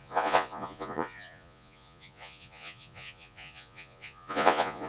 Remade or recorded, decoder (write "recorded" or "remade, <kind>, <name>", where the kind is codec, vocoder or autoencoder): remade, vocoder, Vocos